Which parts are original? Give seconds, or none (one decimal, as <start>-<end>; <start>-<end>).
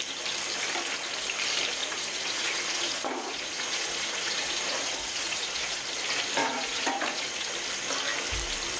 0.0-1.8; 5.8-6.4; 7.5-8.8